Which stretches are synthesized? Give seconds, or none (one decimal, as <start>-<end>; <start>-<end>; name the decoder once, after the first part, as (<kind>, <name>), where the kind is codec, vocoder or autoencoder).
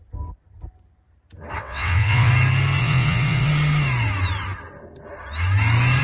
1.6-2.3 (vocoder, WaveNeXt); 2.8-3.5